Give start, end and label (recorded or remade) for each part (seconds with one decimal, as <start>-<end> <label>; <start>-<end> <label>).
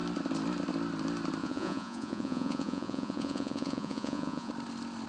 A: 0.0-1.4 recorded; 1.4-4.5 remade; 4.5-5.1 recorded